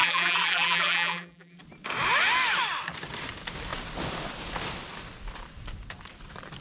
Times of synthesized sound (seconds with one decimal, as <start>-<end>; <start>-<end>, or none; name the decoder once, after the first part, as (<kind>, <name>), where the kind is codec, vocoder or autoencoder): 0.0-1.6 (vocoder, BigVGAN v2)